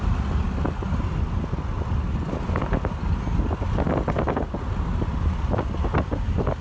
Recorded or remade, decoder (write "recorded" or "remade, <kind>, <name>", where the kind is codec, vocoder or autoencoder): recorded